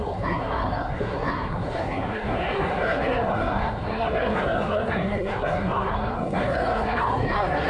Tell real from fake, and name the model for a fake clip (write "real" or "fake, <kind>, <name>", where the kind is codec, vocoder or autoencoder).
fake, codec, SNAC